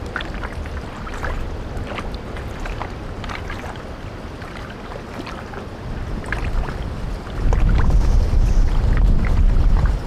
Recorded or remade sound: recorded